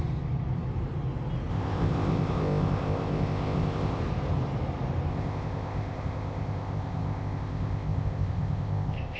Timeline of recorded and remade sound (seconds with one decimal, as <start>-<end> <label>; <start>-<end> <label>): 0.0-1.5 recorded; 1.5-4.0 remade; 4.0-5.1 recorded; 5.1-9.2 remade